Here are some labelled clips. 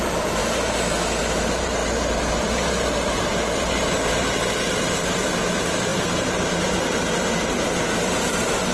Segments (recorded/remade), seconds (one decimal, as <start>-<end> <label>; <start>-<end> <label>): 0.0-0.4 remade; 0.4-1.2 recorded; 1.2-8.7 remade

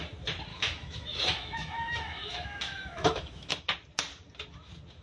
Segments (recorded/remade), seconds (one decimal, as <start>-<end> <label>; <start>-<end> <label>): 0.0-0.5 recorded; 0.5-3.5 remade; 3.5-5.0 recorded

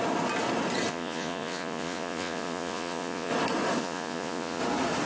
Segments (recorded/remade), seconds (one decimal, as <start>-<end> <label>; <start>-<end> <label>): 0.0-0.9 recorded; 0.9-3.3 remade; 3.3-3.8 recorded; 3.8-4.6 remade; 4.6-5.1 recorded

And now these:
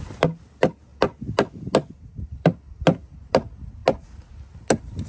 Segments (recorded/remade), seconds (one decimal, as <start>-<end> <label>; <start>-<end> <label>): 0.0-5.1 recorded

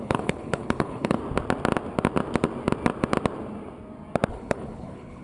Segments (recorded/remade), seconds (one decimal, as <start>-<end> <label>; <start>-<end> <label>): 0.0-1.2 remade; 1.2-4.3 recorded; 4.3-5.2 remade